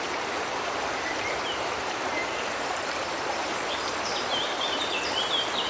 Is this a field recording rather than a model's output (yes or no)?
no